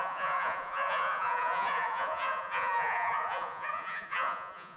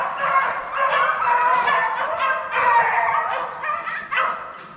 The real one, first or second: second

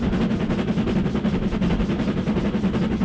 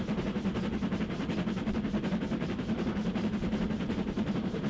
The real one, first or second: first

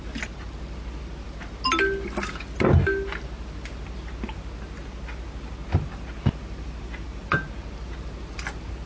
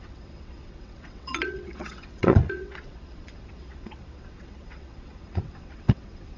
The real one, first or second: first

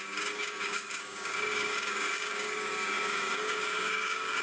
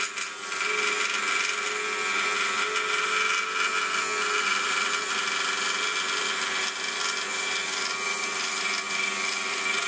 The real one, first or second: second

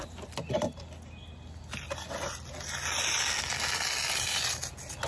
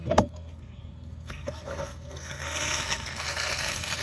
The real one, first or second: first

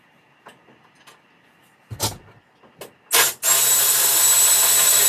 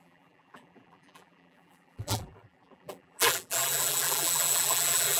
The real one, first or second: first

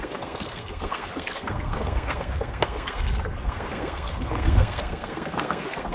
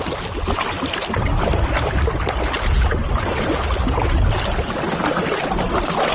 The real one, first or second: second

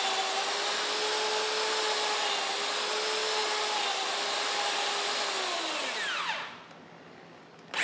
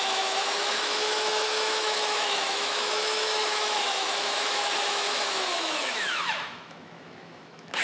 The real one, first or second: first